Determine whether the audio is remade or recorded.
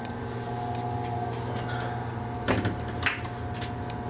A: recorded